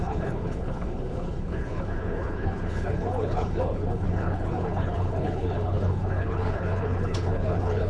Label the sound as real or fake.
fake